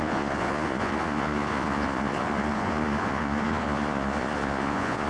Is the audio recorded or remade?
remade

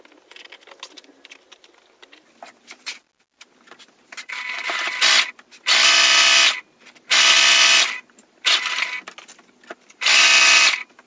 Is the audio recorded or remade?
recorded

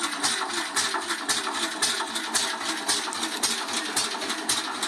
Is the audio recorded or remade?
recorded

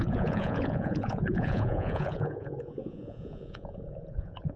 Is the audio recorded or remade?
remade